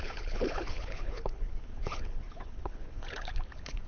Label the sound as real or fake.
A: fake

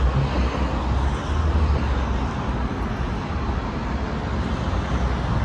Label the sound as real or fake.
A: real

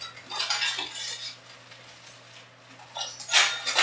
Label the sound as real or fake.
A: real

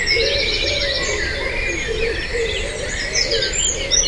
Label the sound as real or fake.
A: real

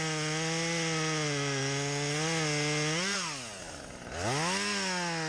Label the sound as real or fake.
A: real